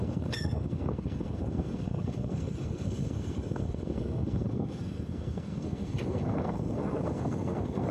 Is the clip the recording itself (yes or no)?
no